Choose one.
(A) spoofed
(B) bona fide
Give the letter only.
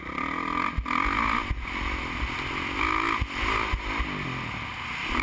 B